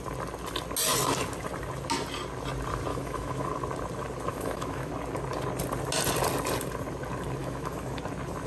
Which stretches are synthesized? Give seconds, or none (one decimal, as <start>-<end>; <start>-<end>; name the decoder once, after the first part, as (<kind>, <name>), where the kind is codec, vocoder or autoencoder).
2.9-3.5 (autoencoder, DAC-VAE); 4.3-4.9; 7.4-8.0